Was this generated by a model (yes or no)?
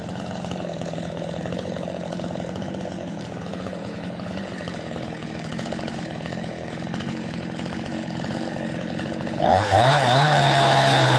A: yes